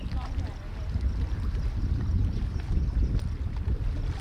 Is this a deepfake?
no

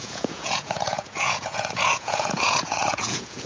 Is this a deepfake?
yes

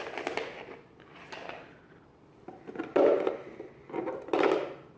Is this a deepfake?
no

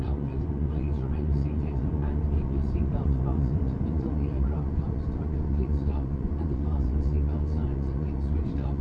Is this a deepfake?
yes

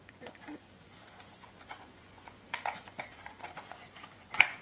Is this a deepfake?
yes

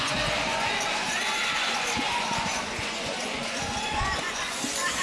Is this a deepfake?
yes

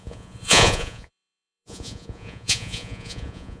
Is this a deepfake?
yes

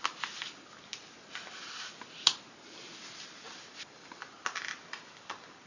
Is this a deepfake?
no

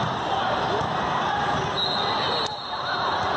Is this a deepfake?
no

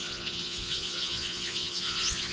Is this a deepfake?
yes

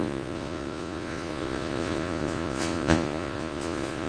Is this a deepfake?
yes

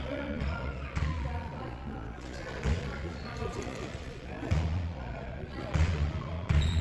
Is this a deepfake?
yes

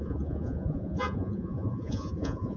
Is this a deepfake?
yes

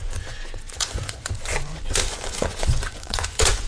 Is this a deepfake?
yes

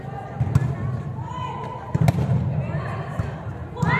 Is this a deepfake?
no